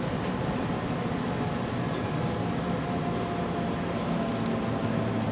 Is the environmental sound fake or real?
real